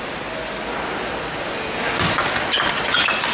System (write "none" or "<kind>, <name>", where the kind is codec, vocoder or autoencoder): none